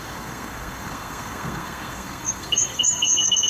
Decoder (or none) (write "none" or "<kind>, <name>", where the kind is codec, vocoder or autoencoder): codec, SNAC